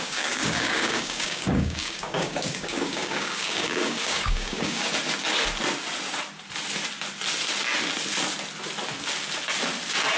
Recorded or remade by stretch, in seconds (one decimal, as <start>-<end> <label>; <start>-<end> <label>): 0.0-4.9 remade; 4.9-10.2 recorded